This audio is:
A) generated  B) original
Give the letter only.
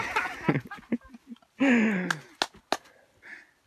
B